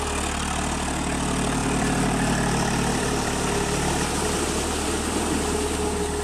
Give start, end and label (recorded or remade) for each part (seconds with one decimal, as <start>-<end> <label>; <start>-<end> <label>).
0.0-1.6 recorded; 1.6-5.3 remade; 5.3-6.2 recorded